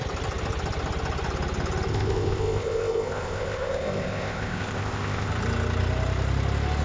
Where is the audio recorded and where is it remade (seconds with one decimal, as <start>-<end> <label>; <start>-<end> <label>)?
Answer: 0.0-1.9 recorded; 1.9-5.3 remade; 5.3-6.8 recorded